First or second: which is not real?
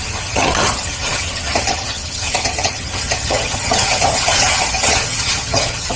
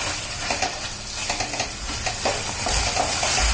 first